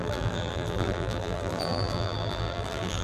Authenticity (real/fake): fake